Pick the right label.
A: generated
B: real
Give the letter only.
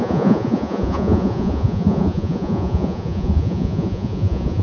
A